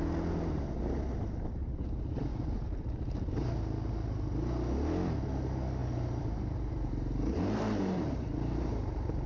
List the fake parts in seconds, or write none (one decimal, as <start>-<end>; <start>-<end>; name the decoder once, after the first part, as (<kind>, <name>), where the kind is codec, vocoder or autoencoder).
2.3-3.3 (vocoder, BigVGAN v2); 5.8-9.3